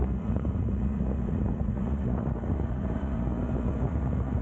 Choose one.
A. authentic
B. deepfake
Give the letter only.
B